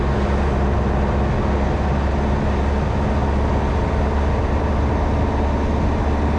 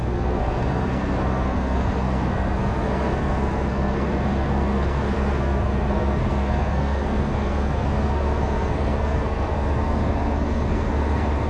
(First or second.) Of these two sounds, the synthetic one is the second